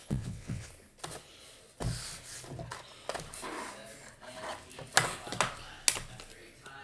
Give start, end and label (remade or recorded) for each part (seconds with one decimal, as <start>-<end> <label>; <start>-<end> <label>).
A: 0.0-0.7 remade; 0.7-6.8 recorded